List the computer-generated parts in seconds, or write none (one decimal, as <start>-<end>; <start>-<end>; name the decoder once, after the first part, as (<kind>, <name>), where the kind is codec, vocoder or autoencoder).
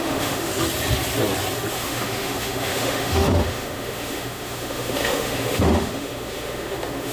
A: 0.0-0.5 (autoencoder, DAC-VAE); 1.7-7.1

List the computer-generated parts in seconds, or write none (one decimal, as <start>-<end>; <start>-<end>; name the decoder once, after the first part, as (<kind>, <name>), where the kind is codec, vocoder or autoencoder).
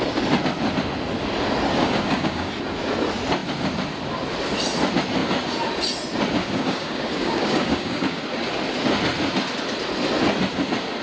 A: 1.8-2.5 (codec, DAC); 6.4-8.2